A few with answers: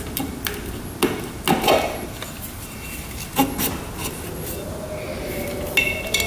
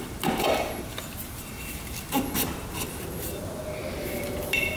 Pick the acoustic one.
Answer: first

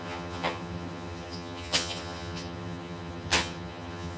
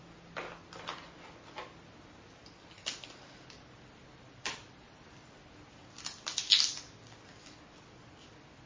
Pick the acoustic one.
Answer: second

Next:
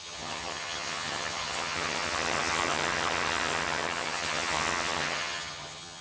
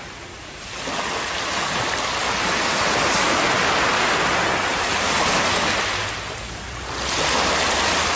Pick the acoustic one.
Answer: second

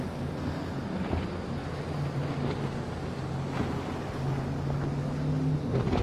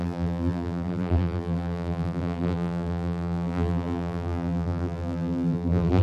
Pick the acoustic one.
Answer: first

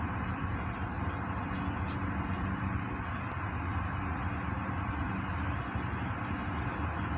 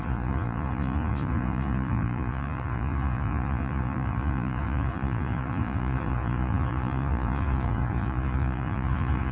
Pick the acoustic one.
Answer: first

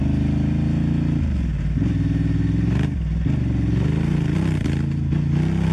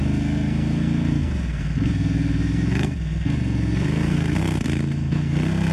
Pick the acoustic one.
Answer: first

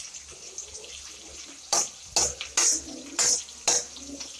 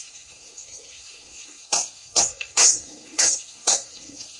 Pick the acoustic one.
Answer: first